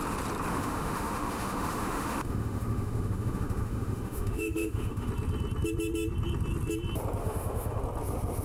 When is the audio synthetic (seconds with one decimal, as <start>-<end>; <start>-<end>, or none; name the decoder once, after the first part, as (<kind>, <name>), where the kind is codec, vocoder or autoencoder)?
0.5-5.1 (autoencoder, DAC-VAE); 7.2-7.8